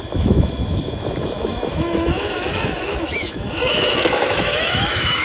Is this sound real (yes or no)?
no